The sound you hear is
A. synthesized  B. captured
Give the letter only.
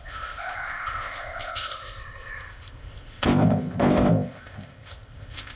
A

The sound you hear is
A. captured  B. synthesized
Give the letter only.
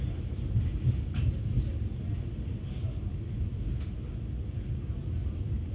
A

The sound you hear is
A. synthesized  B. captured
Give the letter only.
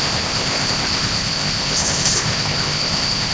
A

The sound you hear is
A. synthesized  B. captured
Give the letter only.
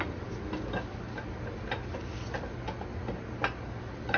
B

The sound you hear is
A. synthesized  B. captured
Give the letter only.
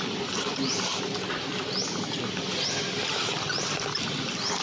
B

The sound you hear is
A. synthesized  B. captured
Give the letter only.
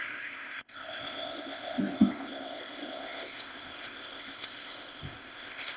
A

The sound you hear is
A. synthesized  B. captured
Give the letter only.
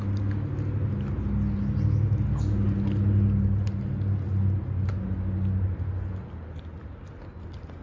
B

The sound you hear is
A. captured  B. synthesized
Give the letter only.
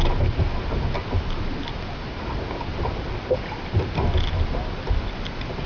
A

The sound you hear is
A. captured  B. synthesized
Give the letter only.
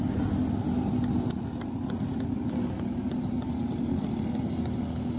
A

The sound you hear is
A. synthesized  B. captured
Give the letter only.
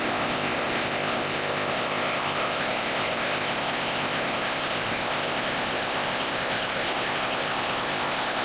A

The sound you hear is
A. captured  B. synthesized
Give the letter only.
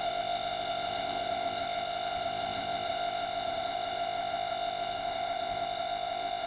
B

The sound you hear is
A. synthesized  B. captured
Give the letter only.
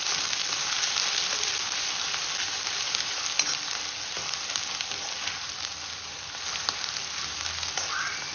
B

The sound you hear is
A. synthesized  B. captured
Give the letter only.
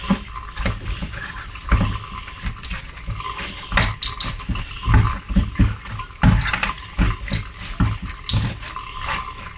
B